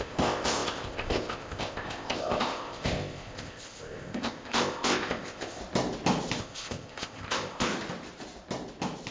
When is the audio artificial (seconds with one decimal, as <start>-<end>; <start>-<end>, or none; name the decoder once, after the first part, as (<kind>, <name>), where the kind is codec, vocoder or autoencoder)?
0.0-5.6 (codec, ZipCodec); 6.4-7.7